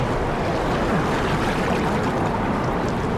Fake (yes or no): no